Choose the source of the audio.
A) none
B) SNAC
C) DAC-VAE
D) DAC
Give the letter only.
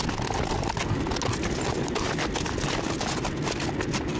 A